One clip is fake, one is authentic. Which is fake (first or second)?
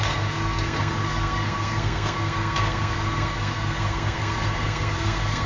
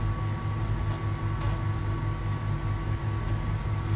first